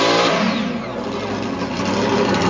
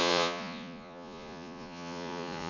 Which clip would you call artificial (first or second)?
second